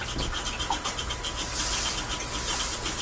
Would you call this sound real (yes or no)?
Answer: yes